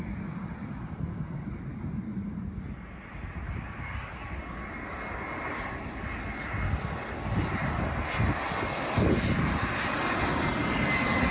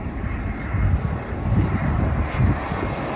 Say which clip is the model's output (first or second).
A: second